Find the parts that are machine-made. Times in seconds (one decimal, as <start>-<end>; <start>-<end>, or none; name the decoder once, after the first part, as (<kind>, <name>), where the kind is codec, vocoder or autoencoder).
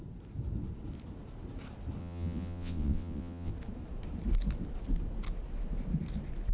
2.0-3.5 (vocoder, WaveNeXt)